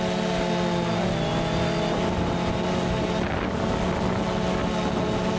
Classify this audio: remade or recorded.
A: recorded